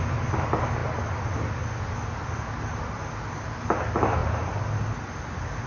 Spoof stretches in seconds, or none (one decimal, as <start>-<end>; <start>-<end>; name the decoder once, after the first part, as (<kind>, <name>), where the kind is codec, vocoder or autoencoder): none

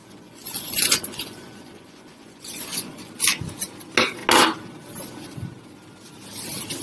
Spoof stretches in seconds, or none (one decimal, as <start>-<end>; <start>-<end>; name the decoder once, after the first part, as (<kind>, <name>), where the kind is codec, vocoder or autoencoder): 0.0-3.1 (vocoder, Vocos)

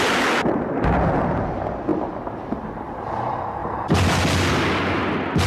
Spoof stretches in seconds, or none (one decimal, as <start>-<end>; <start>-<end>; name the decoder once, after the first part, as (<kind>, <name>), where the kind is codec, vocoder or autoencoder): none